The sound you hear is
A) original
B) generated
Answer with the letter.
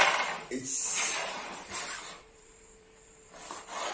B